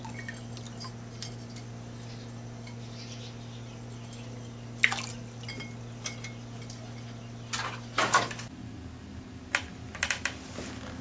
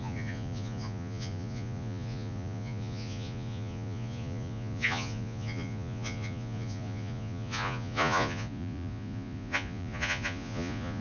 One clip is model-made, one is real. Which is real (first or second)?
first